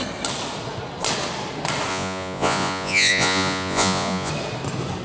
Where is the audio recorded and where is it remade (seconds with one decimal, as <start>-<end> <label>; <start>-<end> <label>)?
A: 0.0-1.9 recorded; 1.9-4.3 remade; 4.3-5.0 recorded